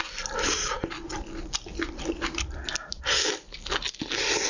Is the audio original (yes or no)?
yes